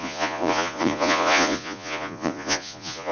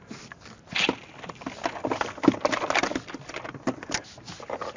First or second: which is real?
second